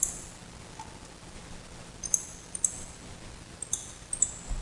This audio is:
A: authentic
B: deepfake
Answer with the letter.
A